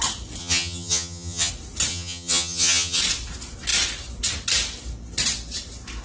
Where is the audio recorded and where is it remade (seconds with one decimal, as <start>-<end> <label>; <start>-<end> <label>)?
0.0-0.4 recorded; 0.4-1.5 remade; 1.5-1.9 recorded; 1.9-3.0 remade; 3.0-6.0 recorded